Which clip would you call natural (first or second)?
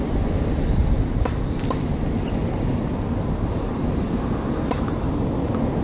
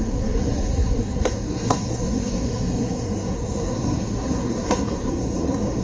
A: first